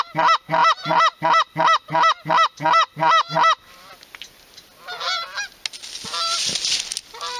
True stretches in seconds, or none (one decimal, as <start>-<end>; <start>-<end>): 0.0-7.4